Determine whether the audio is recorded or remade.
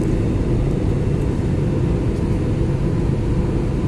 recorded